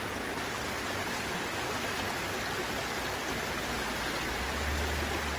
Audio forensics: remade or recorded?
recorded